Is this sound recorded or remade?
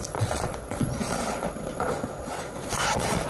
remade